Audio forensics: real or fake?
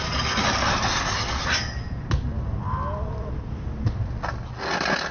real